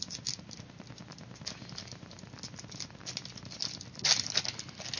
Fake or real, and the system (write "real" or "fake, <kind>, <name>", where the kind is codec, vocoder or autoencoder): real